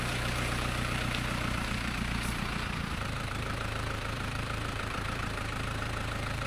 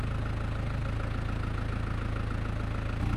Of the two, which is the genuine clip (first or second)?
second